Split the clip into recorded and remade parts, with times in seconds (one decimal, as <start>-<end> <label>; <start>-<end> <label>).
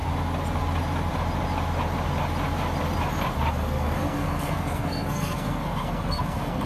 0.0-3.5 recorded; 3.5-6.7 remade